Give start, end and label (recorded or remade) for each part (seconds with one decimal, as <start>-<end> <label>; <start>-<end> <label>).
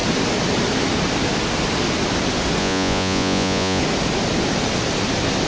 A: 0.0-2.6 recorded; 2.6-3.8 remade; 3.8-5.5 recorded